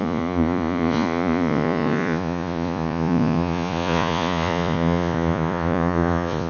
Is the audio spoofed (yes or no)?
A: yes